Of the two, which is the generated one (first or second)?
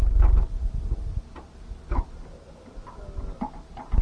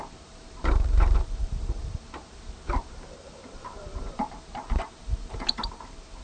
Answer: second